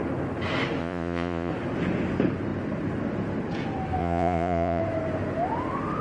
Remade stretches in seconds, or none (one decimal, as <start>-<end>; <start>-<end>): 0.8-1.5; 4.0-4.8